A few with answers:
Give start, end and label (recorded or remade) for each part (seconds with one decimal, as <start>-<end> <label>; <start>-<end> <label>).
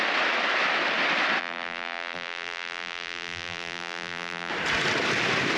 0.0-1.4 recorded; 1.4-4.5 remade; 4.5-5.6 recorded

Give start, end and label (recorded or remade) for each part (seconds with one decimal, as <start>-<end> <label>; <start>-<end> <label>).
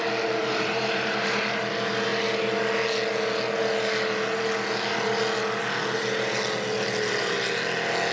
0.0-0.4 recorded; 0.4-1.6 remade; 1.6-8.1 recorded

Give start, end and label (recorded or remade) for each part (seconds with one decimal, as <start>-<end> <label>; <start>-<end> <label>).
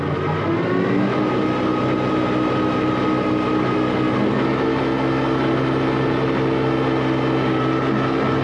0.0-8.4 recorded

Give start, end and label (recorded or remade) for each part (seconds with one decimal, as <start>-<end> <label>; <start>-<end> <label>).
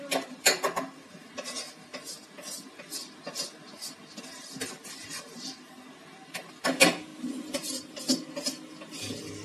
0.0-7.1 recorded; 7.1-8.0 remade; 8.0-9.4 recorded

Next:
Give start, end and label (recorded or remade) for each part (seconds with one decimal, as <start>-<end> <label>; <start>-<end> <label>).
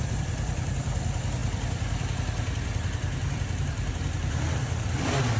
0.0-5.4 remade